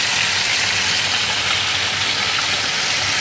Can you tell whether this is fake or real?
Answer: real